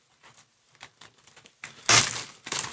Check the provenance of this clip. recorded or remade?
recorded